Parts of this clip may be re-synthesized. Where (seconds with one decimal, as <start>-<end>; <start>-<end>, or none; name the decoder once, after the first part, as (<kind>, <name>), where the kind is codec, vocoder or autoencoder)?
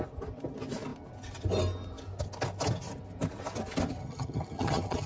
4.0-5.1 (vocoder, HiFi-GAN)